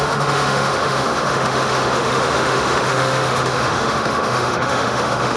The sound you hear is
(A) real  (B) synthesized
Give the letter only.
B